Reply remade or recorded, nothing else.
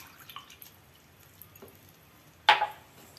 recorded